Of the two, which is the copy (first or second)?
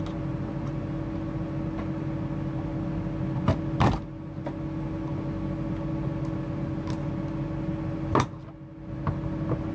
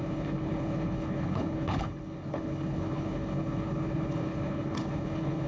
second